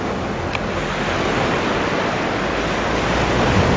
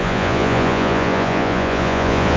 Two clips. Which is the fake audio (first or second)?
second